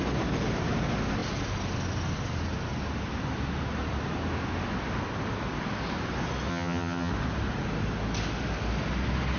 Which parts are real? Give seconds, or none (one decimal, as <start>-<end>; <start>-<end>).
0.0-6.5; 7.1-9.4